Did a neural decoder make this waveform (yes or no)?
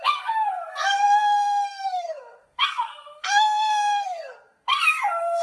yes